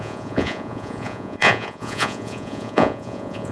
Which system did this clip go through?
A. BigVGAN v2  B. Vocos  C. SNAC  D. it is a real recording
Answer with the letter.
B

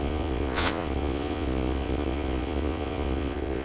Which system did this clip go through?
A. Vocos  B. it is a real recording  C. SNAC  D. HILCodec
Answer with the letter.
A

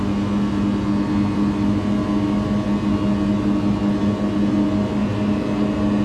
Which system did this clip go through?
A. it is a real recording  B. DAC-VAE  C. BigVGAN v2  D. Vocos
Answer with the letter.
A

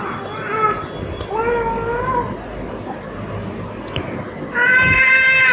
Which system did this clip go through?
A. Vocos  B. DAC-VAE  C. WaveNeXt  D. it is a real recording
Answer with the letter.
D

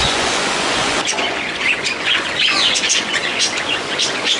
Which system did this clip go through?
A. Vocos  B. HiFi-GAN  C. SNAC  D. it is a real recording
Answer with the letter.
A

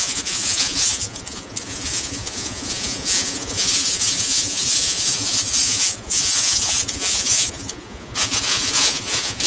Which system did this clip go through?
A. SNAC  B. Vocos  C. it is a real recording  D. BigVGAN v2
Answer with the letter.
B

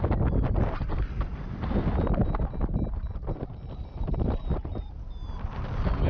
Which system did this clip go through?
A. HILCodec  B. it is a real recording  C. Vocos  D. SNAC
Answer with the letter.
B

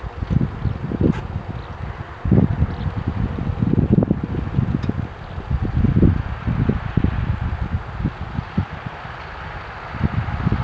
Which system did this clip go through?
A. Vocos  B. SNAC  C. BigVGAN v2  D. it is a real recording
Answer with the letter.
D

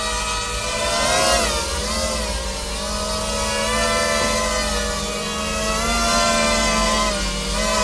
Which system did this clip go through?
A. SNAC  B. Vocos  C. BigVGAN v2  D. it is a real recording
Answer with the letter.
D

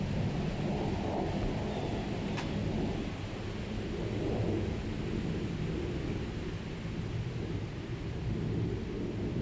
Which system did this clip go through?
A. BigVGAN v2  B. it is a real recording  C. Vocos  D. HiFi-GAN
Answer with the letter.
B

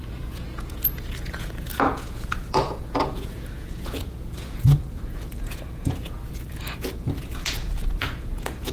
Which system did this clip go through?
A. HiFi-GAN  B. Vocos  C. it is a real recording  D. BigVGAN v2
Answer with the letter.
B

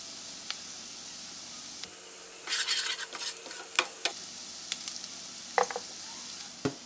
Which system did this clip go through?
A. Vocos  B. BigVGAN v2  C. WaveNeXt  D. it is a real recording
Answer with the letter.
D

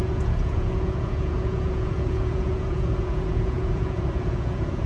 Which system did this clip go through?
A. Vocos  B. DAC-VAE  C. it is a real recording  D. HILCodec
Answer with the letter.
A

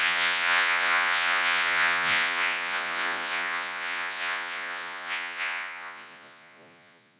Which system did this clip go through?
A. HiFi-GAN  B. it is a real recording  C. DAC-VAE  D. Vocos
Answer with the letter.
D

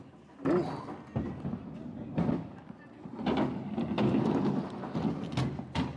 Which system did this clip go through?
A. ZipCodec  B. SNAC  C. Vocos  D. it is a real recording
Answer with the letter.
D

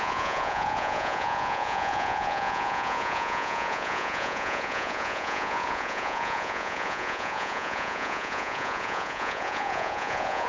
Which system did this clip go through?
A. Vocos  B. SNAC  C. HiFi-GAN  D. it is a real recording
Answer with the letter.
A